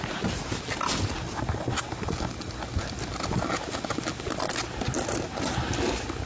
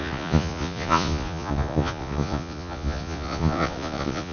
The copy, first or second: second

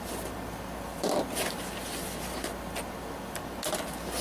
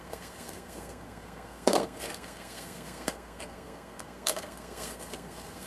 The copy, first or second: second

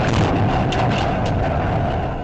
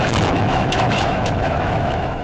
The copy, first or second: second